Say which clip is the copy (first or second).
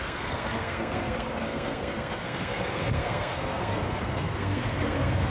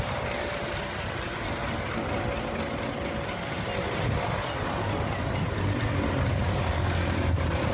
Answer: first